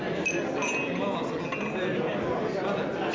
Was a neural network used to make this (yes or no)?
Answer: no